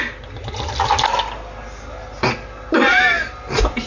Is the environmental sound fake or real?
real